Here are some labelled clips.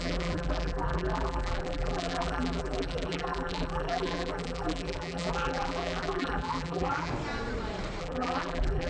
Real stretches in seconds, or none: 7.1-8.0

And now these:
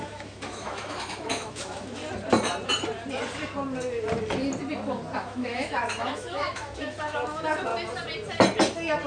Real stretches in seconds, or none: 2.0-5.2; 7.7-9.1

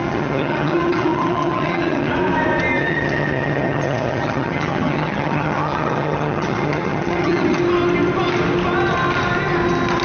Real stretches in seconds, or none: 2.1-2.8; 7.6-10.0